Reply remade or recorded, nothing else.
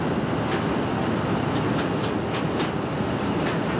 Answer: recorded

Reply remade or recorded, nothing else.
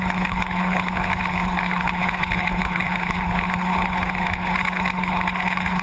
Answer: remade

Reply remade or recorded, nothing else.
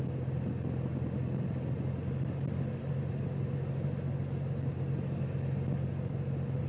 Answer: recorded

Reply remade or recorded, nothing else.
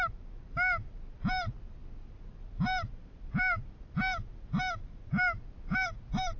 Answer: recorded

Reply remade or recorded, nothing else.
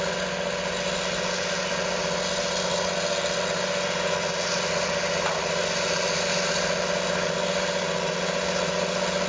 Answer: recorded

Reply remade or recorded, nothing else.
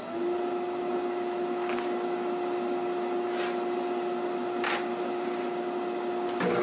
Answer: recorded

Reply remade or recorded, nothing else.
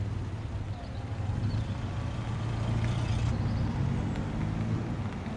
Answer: recorded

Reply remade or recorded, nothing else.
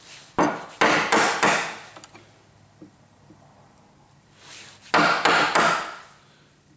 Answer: recorded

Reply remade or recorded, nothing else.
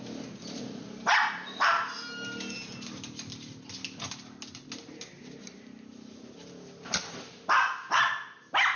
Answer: recorded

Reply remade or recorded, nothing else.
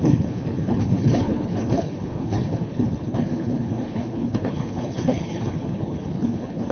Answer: remade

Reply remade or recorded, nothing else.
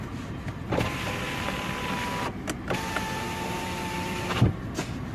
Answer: recorded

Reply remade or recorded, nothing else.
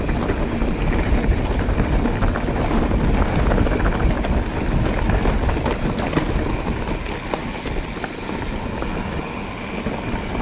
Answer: recorded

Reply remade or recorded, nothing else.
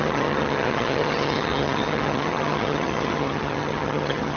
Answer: remade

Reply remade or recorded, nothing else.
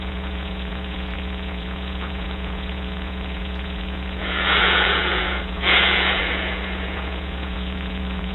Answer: remade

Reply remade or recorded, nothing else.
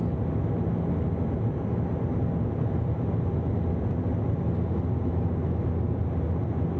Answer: recorded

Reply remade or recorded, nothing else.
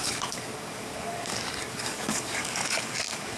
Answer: remade